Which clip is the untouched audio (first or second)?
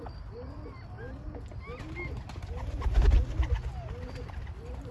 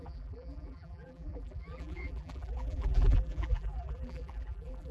first